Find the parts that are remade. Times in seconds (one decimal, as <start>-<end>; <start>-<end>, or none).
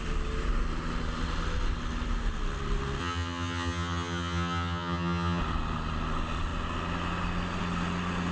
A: 3.0-5.4